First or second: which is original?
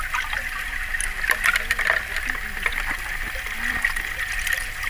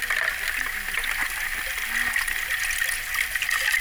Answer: second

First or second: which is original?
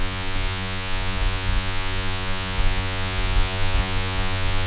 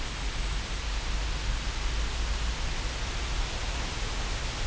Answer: second